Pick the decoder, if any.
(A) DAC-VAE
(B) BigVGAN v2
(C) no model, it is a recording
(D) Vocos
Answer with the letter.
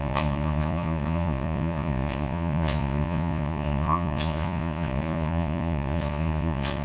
D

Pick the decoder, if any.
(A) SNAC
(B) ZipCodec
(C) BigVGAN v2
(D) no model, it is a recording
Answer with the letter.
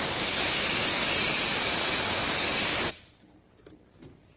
D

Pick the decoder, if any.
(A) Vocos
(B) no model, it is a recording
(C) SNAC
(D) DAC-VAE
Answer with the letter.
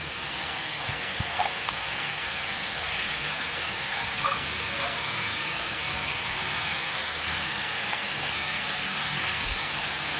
C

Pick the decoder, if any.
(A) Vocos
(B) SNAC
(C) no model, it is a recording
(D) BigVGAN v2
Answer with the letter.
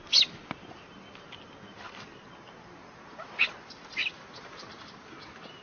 C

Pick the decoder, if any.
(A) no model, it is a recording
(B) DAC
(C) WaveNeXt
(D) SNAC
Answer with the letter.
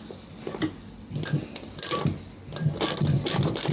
A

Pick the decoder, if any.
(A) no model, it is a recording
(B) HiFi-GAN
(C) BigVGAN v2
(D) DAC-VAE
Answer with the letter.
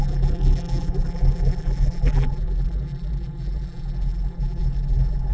C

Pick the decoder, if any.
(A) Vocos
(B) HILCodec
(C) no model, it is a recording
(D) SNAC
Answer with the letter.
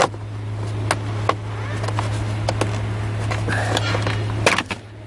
C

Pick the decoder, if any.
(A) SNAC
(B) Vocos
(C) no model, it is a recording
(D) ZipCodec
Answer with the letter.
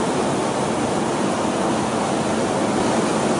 C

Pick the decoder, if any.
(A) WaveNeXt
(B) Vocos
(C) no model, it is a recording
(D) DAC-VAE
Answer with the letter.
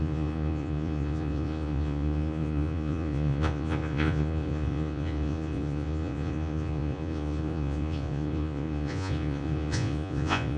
B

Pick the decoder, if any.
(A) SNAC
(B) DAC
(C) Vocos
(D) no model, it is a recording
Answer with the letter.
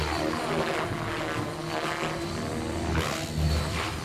D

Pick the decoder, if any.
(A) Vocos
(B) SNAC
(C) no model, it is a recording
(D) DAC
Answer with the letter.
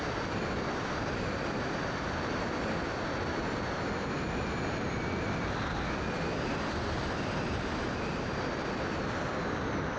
C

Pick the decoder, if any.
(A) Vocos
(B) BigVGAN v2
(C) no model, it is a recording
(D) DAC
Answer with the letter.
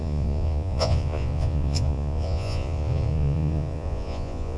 A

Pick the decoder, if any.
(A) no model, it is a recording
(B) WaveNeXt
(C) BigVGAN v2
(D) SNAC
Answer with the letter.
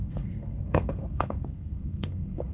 D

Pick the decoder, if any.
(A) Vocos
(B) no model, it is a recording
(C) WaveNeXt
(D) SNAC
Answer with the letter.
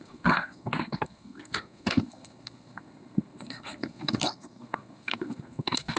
D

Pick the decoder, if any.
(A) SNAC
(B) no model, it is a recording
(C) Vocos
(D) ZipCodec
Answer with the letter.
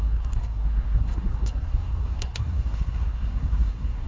A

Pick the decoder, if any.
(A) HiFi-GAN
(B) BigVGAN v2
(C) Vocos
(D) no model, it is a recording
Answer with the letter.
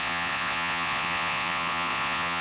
C